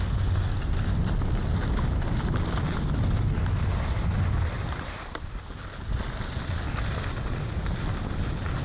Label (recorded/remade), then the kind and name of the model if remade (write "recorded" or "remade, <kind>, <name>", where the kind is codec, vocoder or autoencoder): recorded